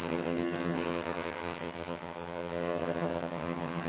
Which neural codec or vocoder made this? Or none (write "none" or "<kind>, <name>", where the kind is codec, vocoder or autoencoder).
vocoder, HiFi-GAN